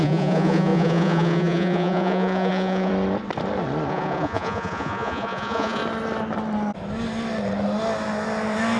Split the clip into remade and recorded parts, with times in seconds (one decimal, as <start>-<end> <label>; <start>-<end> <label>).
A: 0.0-2.9 remade; 2.9-3.9 recorded; 3.9-5.8 remade; 5.8-8.8 recorded